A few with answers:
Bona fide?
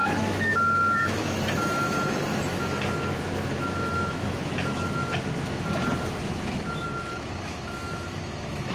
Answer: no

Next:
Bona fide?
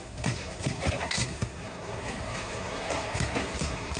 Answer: no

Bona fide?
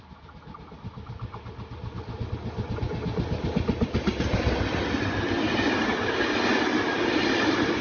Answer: yes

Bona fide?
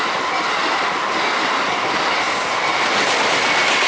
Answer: yes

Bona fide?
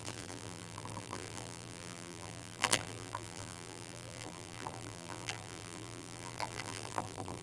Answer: no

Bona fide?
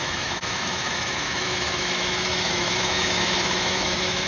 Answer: no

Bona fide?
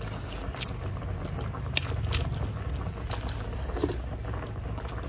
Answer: yes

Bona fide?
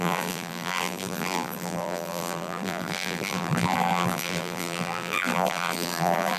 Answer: no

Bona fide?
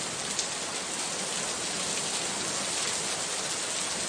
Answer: yes